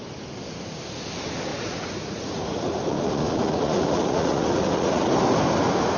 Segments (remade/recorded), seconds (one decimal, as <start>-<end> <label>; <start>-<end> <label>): 0.0-1.5 recorded; 1.5-5.1 remade; 5.1-6.0 recorded